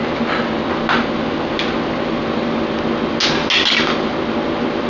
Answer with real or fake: real